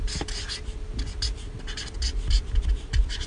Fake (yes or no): no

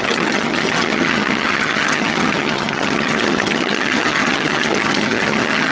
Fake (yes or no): yes